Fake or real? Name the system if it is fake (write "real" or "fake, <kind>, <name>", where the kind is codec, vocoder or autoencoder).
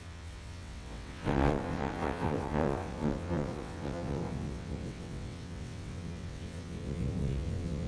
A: fake, vocoder, WaveNeXt